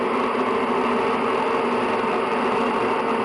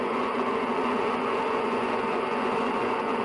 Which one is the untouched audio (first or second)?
first